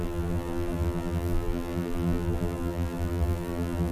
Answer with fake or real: fake